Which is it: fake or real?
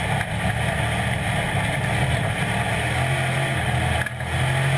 real